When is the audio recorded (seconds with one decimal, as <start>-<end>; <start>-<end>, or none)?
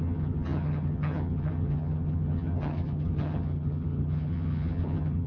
none